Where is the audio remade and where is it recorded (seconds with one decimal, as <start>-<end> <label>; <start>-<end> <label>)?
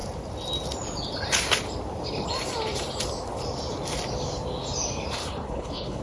0.0-5.2 recorded; 5.2-6.0 remade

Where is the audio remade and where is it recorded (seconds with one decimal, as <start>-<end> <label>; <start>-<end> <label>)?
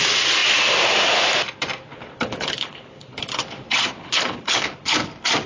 0.0-1.9 recorded; 1.9-3.4 remade; 3.4-4.0 recorded; 4.0-5.1 remade; 5.1-5.5 recorded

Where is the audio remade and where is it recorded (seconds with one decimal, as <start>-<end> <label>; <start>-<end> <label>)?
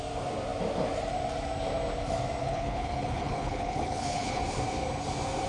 0.0-2.4 recorded; 2.4-4.4 remade; 4.4-5.5 recorded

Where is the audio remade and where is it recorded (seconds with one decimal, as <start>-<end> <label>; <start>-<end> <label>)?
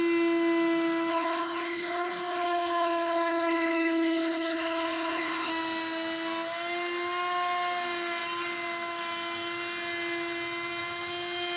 0.0-1.1 recorded; 1.1-5.5 remade; 5.5-11.6 recorded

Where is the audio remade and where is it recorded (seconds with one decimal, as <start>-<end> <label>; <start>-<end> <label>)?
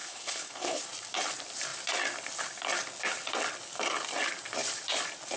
0.0-0.8 remade; 0.8-5.4 recorded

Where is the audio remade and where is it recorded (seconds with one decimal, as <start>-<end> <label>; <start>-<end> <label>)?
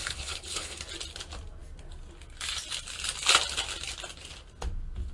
0.0-0.8 remade; 0.8-5.1 recorded